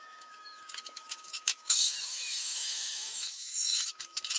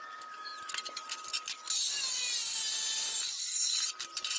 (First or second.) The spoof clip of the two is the first